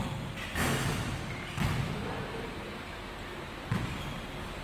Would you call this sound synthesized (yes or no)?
no